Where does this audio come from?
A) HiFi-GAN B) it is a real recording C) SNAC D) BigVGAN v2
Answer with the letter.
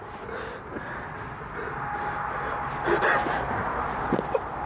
B